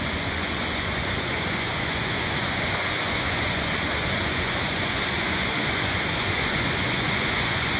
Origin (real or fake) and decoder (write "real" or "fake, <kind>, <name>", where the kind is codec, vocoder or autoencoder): fake, vocoder, Vocos